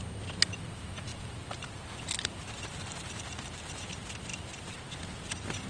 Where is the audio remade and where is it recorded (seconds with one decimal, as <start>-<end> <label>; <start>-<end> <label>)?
0.0-1.1 recorded; 1.1-3.9 remade; 3.9-4.3 recorded; 4.3-4.9 remade; 4.9-5.7 recorded